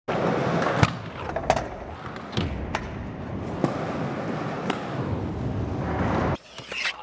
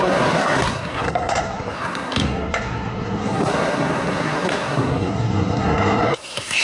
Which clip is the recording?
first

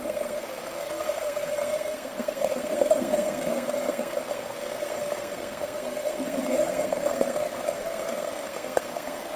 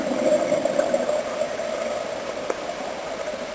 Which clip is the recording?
second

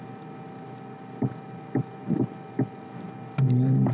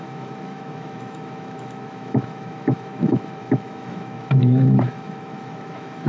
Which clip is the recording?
first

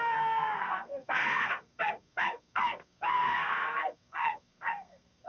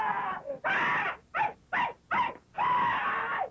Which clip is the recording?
second